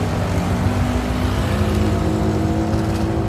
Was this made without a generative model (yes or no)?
yes